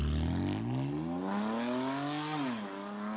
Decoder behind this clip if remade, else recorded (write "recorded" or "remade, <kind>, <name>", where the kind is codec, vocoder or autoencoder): recorded